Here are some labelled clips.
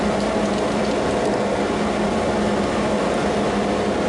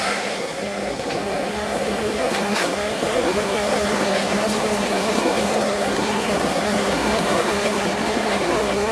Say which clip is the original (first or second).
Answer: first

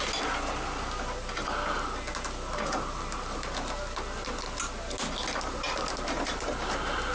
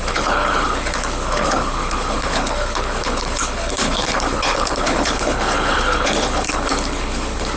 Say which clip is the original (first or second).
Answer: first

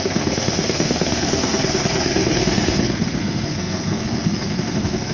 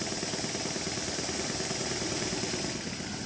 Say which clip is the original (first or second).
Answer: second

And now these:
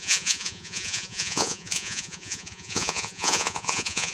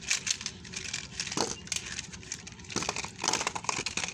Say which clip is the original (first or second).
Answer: second